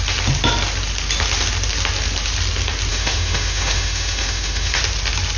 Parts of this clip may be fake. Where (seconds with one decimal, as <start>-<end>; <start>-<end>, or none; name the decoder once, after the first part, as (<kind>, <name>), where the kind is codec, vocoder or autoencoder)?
2.9-4.8 (autoencoder, DAC-VAE)